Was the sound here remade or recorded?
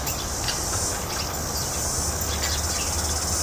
recorded